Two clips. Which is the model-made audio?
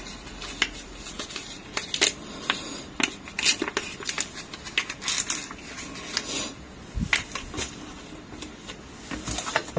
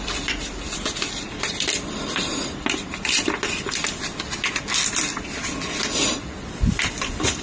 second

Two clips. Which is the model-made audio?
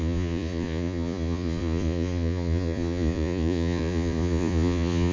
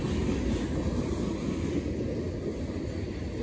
first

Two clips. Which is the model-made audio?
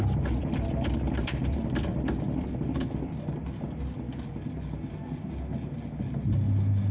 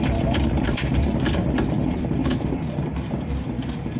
second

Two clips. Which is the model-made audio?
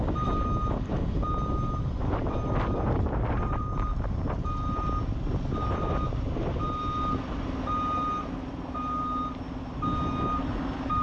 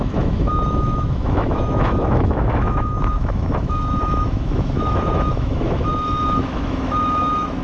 second